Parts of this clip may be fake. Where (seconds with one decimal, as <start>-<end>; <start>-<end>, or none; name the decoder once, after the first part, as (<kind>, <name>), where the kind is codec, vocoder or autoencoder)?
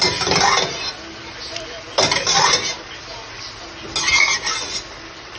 none